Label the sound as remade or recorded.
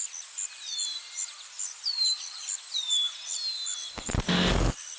recorded